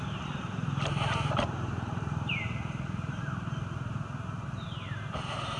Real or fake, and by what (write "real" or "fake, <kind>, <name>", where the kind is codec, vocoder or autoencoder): fake, vocoder, BigVGAN v2